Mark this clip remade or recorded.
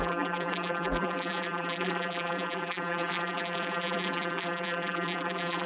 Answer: remade